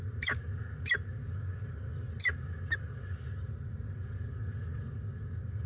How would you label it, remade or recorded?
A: recorded